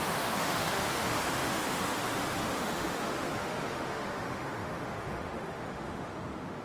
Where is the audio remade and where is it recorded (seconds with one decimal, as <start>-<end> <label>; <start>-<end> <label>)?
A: 0.0-6.6 remade